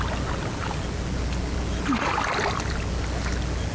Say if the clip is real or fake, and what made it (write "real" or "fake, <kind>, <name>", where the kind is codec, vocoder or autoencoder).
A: real